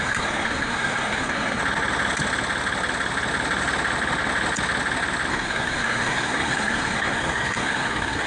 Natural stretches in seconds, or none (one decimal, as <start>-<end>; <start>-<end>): 1.6-5.3